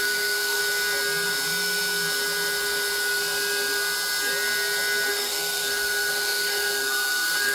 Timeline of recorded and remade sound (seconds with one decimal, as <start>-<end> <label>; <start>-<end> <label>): 0.0-0.6 remade; 0.6-5.1 recorded; 5.1-7.5 remade